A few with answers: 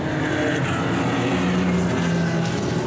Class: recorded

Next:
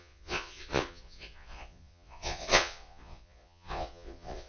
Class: remade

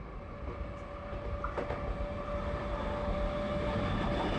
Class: recorded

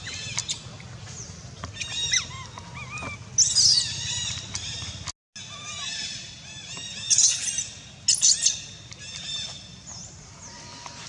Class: recorded